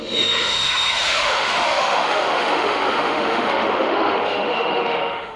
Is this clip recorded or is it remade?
remade